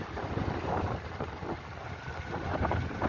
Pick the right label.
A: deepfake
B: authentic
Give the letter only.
B